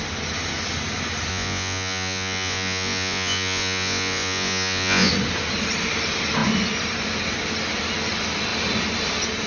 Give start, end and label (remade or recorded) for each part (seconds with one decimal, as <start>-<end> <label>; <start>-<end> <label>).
0.0-1.3 recorded; 1.3-5.1 remade; 5.1-9.5 recorded